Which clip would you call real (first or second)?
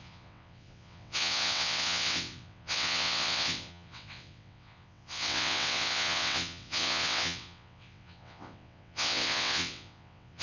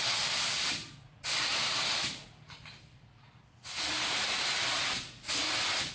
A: second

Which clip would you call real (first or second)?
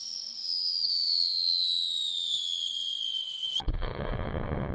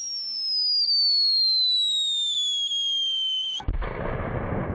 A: second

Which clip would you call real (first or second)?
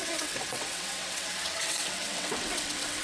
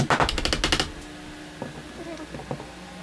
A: second